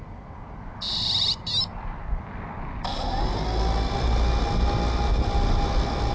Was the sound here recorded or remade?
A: recorded